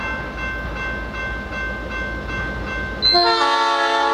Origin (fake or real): real